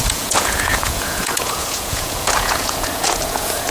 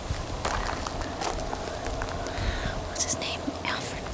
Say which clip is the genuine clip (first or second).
second